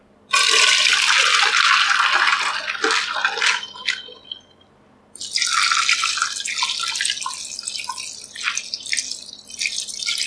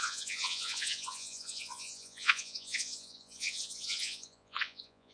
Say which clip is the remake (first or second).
second